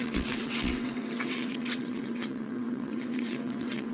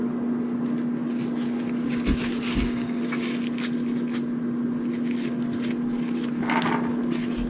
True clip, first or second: second